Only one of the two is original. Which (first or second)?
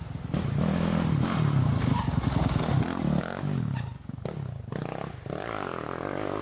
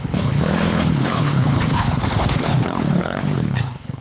first